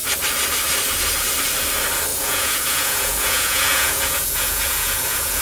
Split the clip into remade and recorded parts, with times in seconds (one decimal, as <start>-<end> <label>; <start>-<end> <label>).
0.0-2.1 recorded; 2.1-5.4 remade